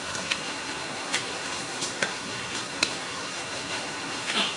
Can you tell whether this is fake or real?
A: fake